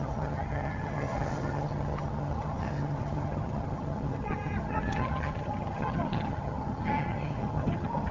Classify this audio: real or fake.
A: fake